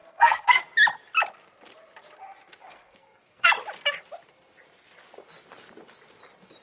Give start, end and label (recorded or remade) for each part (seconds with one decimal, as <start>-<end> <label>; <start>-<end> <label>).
0.0-0.6 remade; 0.6-2.7 recorded; 2.7-3.5 remade; 3.5-6.6 recorded